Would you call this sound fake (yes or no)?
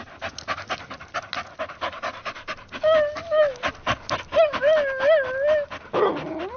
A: no